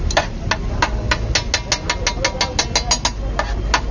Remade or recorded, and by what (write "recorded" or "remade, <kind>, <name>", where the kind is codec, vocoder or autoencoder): recorded